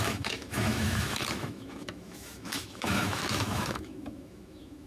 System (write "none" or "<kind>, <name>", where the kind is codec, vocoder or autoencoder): autoencoder, DAC-VAE